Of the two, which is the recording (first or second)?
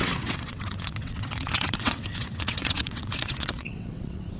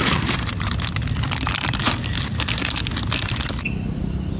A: second